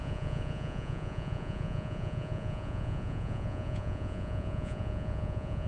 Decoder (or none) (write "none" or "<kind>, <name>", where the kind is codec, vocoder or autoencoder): vocoder, Vocos